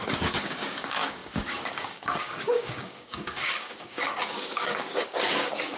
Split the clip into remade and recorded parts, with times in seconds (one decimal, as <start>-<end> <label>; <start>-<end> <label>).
0.0-5.8 remade